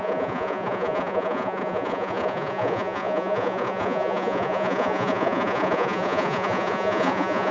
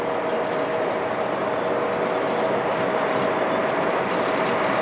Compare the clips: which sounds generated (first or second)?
first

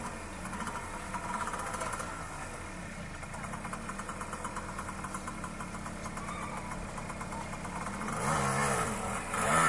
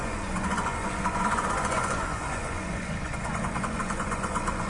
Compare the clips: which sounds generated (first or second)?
second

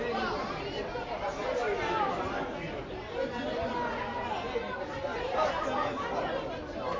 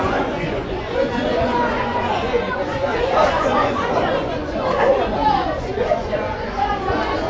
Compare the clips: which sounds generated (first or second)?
second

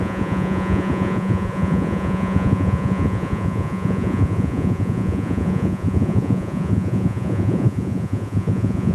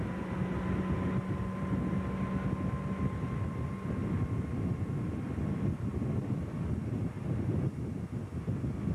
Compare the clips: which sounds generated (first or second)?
first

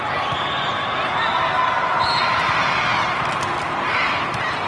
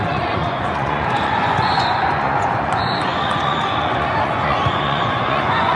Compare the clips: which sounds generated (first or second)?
second